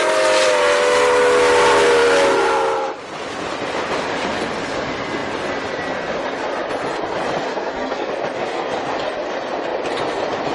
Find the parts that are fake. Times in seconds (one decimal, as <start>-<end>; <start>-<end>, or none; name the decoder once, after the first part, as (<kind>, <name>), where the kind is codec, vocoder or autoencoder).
7.5-8.1 (codec, SNAC)